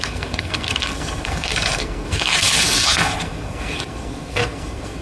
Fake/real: fake